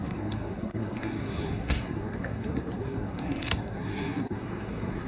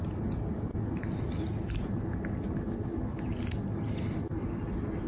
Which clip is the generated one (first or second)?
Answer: first